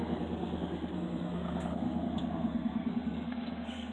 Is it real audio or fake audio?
fake